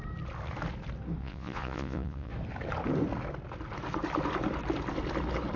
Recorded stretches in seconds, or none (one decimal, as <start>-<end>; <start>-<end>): 0.0-1.2; 2.3-5.6